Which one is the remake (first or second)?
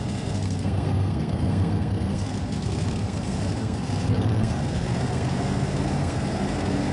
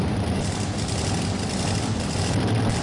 first